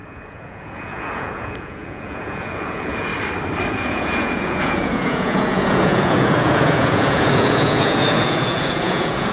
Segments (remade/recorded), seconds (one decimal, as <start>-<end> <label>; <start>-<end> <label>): 0.0-3.1 remade; 3.1-3.7 recorded; 3.7-9.3 remade